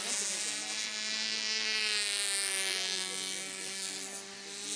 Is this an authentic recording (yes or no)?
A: yes